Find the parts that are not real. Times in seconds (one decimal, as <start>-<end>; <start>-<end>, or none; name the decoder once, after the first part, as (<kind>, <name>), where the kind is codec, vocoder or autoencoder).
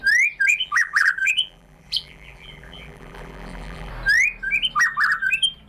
0.5-3.9 (vocoder, BigVGAN v2)